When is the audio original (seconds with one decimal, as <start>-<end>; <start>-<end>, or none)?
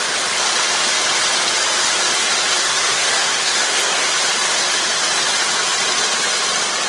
0.0-2.6; 4.2-6.9